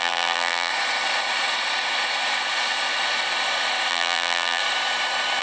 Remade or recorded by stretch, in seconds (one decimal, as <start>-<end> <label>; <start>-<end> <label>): 0.0-0.7 remade; 0.7-3.9 recorded; 3.9-4.6 remade; 4.6-5.4 recorded